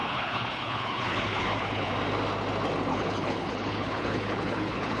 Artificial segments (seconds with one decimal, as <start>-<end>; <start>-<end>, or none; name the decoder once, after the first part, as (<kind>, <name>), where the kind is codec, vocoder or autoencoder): 0.0-1.9 (codec, HILCodec); 2.9-5.0